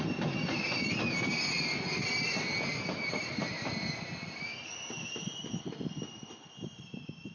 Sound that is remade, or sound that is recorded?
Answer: recorded